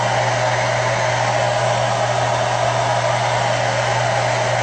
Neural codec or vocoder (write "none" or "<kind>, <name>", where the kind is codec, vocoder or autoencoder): none